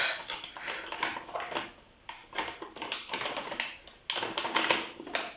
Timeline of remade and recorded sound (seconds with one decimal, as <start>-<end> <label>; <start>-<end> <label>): 0.0-1.1 recorded; 1.1-1.7 remade; 1.7-2.2 recorded; 2.2-4.0 remade; 4.0-5.4 recorded